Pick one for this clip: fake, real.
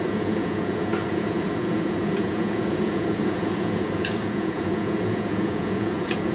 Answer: fake